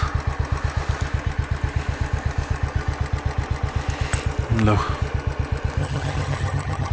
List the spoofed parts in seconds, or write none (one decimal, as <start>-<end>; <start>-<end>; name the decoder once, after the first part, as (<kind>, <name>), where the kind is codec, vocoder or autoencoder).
5.8-6.9 (vocoder, HiFi-GAN)